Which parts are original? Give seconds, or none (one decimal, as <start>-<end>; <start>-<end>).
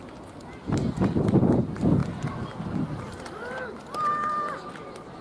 0.0-2.0; 4.0-5.2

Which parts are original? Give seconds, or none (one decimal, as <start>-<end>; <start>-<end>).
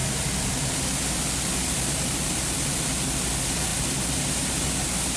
0.7-5.2